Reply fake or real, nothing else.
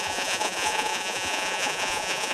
fake